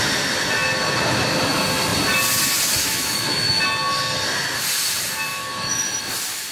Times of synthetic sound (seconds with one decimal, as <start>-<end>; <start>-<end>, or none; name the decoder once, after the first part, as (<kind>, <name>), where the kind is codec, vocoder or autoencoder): 2.8-3.6 (autoencoder, DAC-VAE); 5.3-6.0